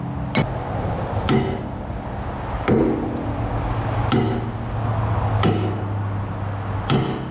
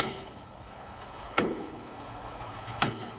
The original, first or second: first